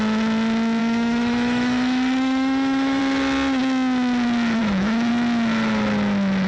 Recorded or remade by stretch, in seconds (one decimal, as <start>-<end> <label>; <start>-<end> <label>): 0.0-0.8 recorded; 0.8-3.0 remade; 3.0-4.6 recorded; 4.6-5.1 remade; 5.1-6.5 recorded